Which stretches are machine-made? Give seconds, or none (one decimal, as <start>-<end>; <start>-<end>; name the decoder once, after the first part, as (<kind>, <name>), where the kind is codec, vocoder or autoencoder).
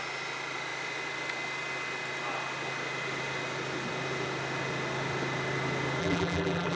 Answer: 6.0-6.8 (vocoder, BigVGAN v2)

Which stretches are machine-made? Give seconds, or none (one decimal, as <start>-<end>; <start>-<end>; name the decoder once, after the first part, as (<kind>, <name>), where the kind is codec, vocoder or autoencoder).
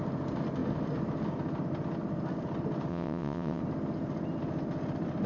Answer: 2.9-3.6 (vocoder, WaveNeXt)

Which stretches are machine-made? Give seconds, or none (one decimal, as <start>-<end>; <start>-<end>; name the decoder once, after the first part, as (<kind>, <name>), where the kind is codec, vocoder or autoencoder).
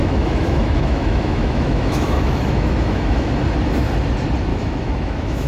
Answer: 0.0-3.3 (autoencoder, DAC-VAE); 4.5-5.5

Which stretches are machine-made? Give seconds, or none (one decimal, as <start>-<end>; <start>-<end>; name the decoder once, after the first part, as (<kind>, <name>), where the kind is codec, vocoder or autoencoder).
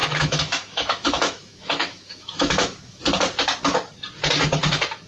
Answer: 0.0-3.0 (autoencoder, DAC-VAE)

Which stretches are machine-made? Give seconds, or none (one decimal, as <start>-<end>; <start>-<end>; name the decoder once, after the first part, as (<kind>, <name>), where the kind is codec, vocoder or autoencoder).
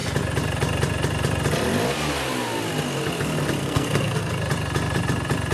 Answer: 3.6-4.3 (codec, SNAC)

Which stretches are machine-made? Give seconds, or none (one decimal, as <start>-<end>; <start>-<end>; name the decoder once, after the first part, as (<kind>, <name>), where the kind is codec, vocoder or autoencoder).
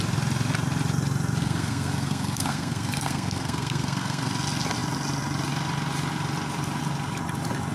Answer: 1.4-4.3 (codec, SNAC)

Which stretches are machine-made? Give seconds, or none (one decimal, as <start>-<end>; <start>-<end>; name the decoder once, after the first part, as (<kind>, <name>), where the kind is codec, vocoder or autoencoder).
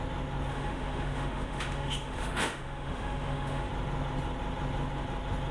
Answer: 0.5-3.7 (autoencoder, DAC-VAE)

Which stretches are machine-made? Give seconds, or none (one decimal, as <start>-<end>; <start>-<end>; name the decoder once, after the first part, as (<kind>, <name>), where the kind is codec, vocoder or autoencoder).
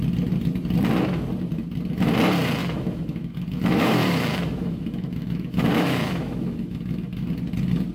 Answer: 2.6-7.3 (autoencoder, DAC-VAE)